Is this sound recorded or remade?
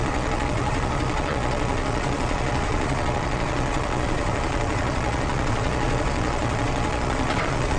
remade